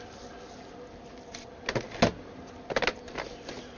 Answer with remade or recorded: recorded